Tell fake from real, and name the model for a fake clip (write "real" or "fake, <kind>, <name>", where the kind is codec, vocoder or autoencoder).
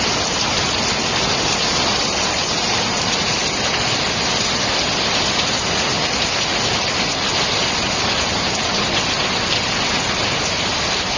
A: real